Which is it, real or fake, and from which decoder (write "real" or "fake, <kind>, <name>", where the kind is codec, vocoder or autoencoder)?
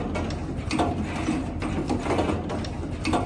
real